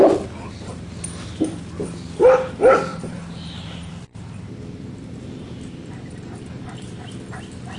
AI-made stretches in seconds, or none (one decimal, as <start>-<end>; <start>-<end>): 2.9-7.0